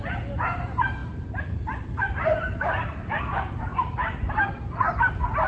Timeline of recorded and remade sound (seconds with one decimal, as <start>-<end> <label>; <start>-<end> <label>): 0.0-1.0 recorded; 1.0-4.3 remade; 4.3-5.5 recorded